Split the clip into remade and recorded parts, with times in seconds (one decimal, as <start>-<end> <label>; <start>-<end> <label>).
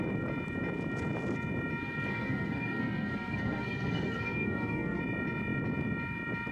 0.0-2.1 recorded; 2.1-5.0 remade; 5.0-6.5 recorded